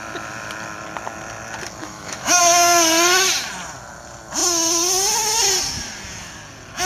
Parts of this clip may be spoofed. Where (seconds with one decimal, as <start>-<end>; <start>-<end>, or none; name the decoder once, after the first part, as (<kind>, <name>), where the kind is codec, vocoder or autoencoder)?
1.8-2.4 (autoencoder, DAC-VAE)